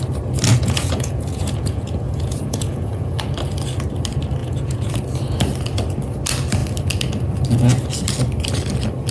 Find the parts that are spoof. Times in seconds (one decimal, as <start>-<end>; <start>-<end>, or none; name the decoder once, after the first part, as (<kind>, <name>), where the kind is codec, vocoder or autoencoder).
0.5-3.2 (vocoder, Vocos); 4.4-4.9